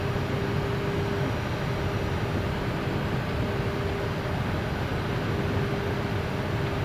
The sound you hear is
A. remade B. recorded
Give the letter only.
B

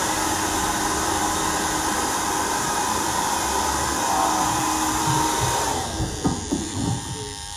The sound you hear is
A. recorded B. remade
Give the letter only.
B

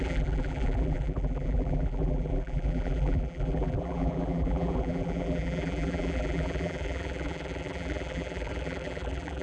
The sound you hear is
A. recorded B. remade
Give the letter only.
B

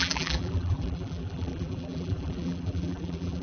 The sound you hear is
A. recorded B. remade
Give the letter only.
B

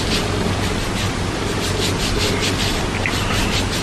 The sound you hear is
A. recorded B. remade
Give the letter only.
A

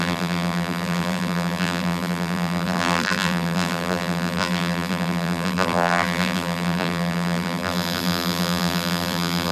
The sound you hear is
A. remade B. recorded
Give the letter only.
A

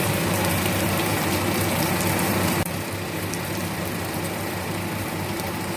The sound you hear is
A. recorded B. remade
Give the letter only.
B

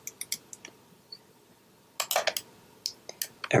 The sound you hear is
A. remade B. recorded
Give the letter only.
B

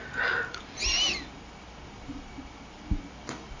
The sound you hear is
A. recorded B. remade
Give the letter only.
A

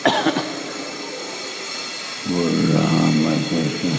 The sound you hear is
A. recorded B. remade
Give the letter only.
A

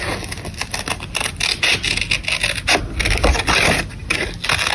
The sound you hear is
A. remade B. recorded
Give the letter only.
B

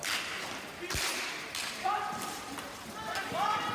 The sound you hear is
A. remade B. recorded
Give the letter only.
A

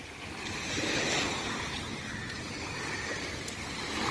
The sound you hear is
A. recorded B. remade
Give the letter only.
A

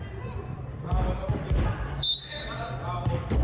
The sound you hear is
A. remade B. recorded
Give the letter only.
A